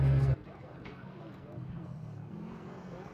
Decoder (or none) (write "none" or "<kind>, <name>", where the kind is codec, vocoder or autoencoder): codec, SNAC